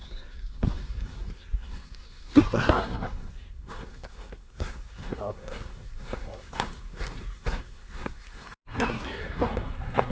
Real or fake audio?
fake